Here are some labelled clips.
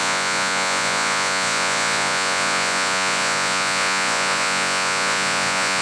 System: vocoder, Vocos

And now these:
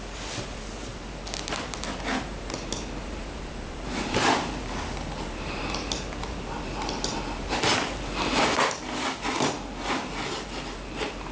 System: none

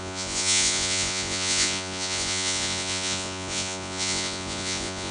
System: vocoder, Vocos